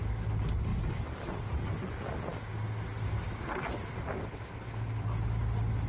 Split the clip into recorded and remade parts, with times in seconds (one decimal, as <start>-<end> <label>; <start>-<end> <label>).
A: 0.0-5.9 recorded